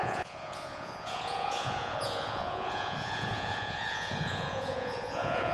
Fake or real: fake